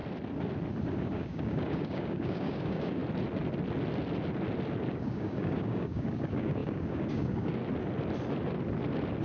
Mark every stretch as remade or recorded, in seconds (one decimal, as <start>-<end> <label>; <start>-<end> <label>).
0.0-1.0 recorded; 1.0-3.0 remade; 3.0-4.9 recorded; 4.9-7.6 remade; 7.6-9.2 recorded